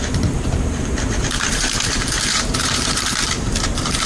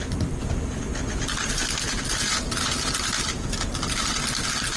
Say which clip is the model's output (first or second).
first